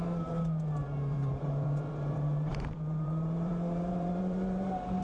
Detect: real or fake fake